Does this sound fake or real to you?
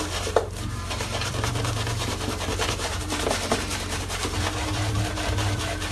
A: fake